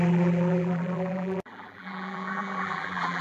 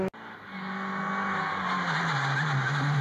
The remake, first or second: first